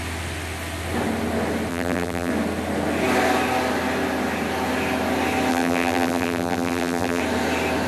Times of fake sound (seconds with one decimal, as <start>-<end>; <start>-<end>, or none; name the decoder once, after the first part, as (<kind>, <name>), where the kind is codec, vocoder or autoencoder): 1.7-2.3 (vocoder, BigVGAN v2); 5.5-7.2